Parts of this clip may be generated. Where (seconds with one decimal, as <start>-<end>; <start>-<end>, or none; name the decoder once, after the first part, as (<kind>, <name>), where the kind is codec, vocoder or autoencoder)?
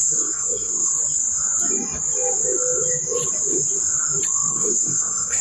0.0-0.9 (codec, SNAC); 4.5-5.4